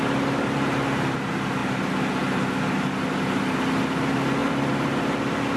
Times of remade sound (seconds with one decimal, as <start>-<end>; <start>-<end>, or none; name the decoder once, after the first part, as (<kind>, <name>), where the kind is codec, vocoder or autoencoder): none